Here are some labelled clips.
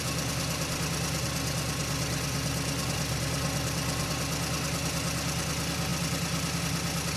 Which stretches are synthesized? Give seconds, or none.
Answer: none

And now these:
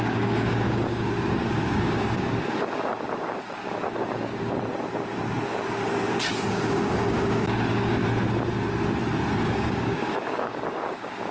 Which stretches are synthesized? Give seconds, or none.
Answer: 0.0-4.3 (codec, DAC); 6.5-8.0; 9.4-11.3

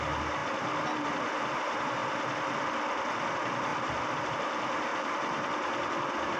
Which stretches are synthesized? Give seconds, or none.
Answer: 2.0-3.3 (vocoder, BigVGAN v2); 3.7-4.3

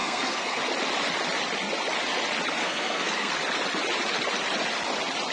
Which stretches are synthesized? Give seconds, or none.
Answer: 0.0-0.6 (codec, SNAC); 2.6-3.3

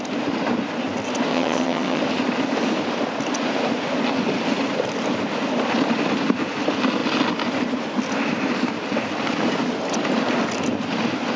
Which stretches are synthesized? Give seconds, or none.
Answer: 1.3-2.0 (vocoder, HiFi-GAN)

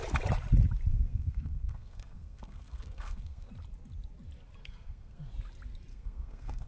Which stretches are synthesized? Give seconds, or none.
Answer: 0.9-3.5 (codec, SNAC); 4.6-5.3; 5.9-6.7